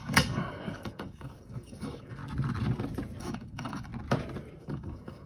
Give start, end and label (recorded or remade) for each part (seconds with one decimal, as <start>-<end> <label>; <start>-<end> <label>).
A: 0.0-2.2 remade; 2.2-3.2 recorded; 3.2-3.9 remade; 3.9-4.6 recorded; 4.6-5.3 remade